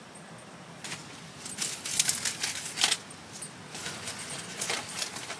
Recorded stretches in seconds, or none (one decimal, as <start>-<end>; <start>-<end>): 0.0-3.7; 4.7-5.4